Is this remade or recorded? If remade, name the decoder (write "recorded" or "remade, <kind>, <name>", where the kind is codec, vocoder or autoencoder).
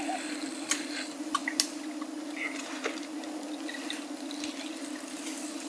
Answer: recorded